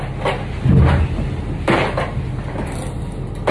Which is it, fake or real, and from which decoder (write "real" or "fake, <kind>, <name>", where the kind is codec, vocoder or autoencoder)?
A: real